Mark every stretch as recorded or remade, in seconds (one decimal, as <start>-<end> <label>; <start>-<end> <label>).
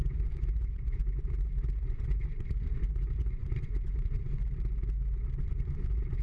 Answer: 0.0-4.4 remade; 4.4-5.4 recorded; 5.4-6.2 remade